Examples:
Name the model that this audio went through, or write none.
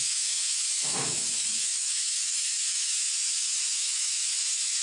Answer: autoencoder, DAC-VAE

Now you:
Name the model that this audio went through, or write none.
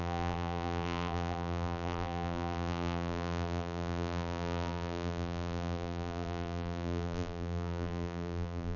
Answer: vocoder, BigVGAN v2